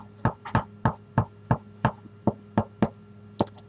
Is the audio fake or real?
real